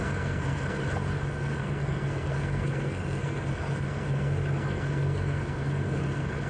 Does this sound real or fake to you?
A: fake